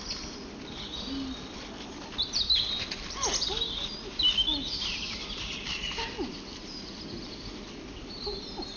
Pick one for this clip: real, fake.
real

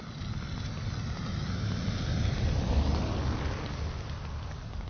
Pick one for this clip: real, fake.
real